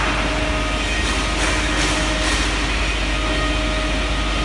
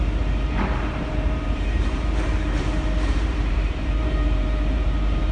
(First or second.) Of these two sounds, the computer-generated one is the second